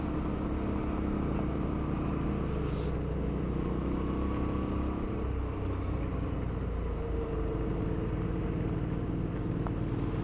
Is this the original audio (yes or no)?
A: yes